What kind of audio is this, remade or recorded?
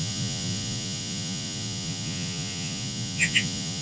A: remade